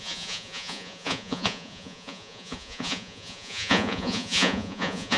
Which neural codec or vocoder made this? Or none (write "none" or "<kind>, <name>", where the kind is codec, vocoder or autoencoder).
vocoder, Vocos